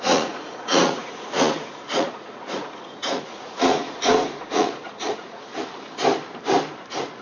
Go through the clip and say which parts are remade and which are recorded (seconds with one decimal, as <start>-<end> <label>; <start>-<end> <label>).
0.0-5.5 remade; 5.5-7.2 recorded